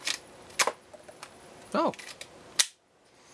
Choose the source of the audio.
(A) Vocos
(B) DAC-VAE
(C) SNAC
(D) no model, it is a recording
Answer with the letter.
D